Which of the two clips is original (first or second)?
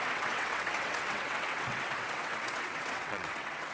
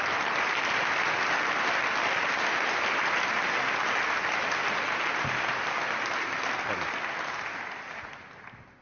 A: second